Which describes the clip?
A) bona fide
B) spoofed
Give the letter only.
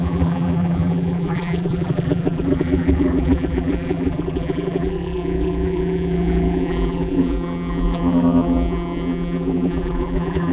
B